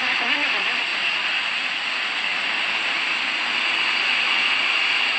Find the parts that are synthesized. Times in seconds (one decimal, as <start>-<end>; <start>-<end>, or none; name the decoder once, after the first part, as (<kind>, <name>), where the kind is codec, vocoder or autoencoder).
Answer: 0.9-1.4 (vocoder, BigVGAN v2); 2.3-3.5